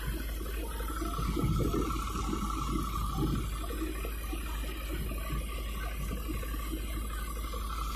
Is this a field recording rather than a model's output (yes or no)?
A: yes